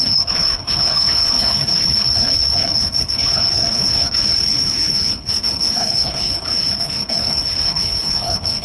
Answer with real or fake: fake